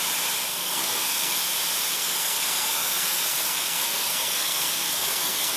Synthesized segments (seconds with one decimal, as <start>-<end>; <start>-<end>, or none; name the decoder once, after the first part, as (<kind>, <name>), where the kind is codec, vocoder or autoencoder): 0.5-1.4 (codec, SNAC); 1.9-5.6